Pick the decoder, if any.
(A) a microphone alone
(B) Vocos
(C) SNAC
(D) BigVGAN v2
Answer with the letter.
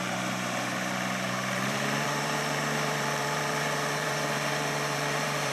D